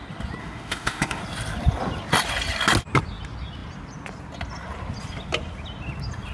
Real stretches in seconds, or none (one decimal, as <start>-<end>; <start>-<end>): 0.0-0.4; 1.2-6.3